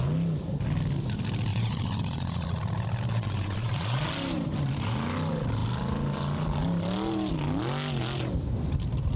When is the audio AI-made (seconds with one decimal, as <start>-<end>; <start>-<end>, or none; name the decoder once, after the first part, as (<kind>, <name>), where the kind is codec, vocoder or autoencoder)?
1.5-2.6 (vocoder, Vocos); 3.1-4.1